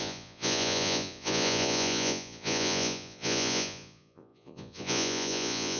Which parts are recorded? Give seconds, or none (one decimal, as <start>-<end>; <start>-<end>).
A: none